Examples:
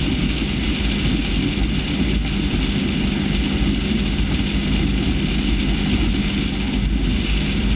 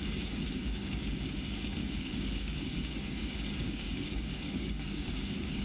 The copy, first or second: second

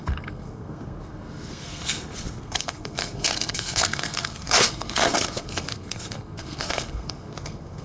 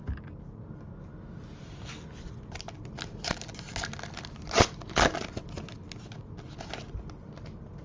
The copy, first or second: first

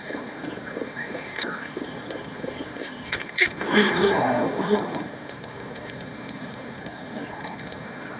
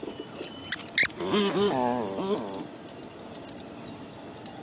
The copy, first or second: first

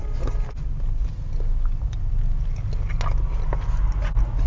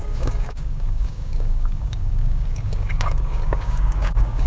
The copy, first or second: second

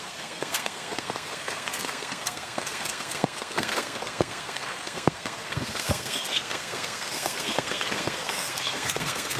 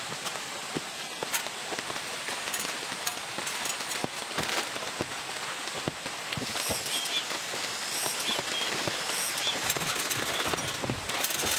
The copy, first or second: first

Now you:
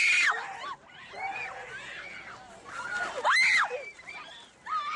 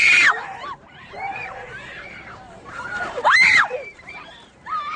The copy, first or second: second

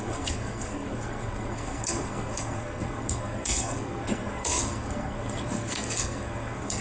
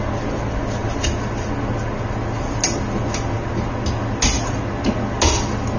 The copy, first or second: first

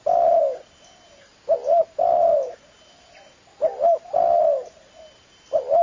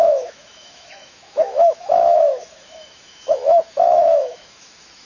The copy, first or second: second